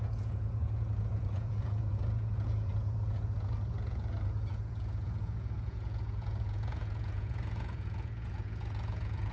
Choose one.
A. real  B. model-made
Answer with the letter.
B